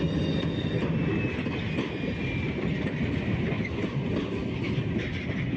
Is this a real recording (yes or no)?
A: yes